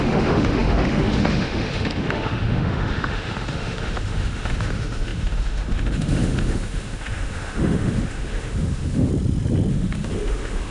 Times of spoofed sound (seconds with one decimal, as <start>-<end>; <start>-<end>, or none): 0.0-9.1; 9.7-10.7